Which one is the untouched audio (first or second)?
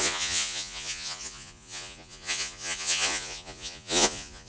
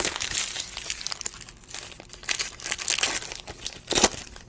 second